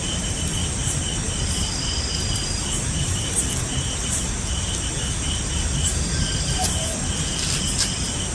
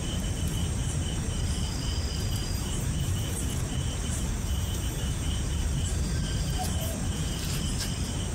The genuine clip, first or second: first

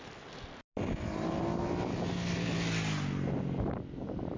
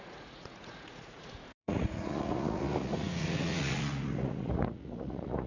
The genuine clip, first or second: first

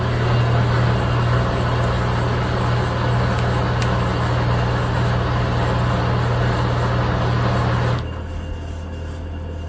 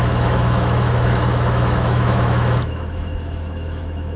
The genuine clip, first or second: first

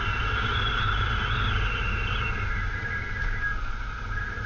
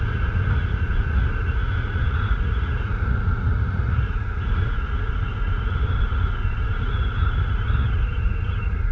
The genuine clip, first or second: first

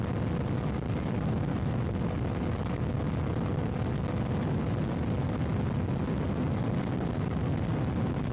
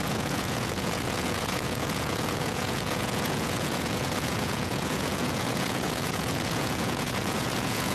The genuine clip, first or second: first